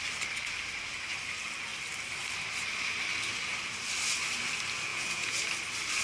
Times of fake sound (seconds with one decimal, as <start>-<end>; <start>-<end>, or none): 4.9-5.4